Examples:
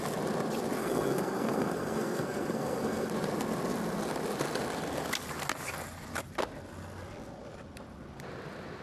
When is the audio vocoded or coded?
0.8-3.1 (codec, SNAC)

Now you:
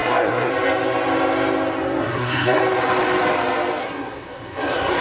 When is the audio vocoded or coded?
0.0-0.5 (codec, SNAC); 2.0-2.6; 3.8-5.0

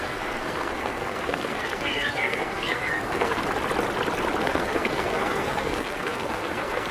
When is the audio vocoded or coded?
0.0-3.4 (codec, SNAC); 4.4-6.9

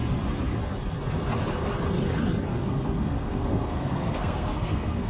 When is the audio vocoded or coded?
2.5-5.1 (codec, SNAC)

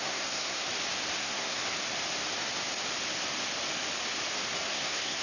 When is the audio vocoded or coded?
0.0-0.6 (codec, SNAC); 1.2-1.6; 4.7-5.2

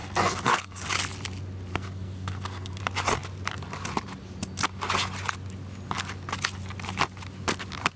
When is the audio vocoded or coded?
0.0-0.9 (codec, SNAC); 1.7-2.8

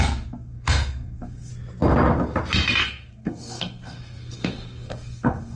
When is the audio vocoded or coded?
0.0-1.5 (codec, SNAC); 2.8-5.6